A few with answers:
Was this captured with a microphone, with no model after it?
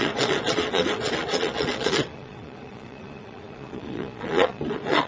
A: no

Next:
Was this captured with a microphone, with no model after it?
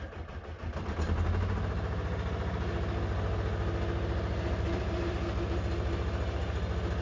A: yes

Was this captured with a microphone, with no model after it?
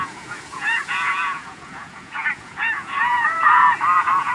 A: no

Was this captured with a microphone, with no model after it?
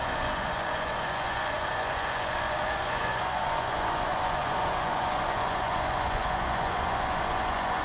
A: no